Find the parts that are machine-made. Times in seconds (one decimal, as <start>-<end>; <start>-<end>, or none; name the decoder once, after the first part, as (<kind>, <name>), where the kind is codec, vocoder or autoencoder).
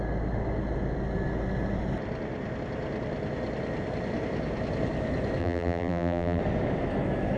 5.4-6.4 (vocoder, BigVGAN v2)